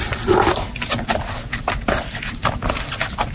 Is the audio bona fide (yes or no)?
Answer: yes